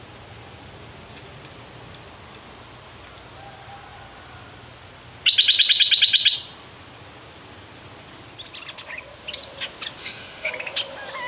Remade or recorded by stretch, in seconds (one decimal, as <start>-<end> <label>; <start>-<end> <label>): 0.0-10.0 recorded; 10.0-10.5 remade; 10.5-11.3 recorded